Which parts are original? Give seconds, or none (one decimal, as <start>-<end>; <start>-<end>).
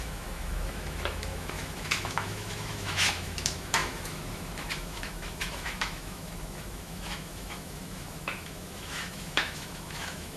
none